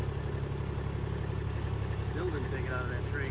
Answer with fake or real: real